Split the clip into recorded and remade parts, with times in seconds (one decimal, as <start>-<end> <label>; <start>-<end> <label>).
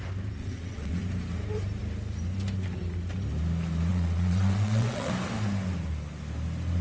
0.0-0.4 recorded; 0.4-1.0 remade; 1.0-3.9 recorded; 3.9-5.1 remade; 5.1-6.8 recorded